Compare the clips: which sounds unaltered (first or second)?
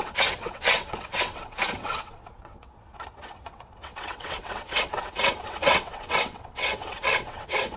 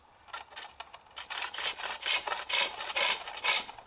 second